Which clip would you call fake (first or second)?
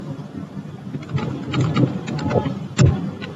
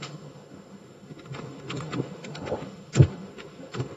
second